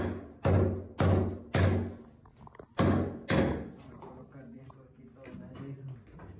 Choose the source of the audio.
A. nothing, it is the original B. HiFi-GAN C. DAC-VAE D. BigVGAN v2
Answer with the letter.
A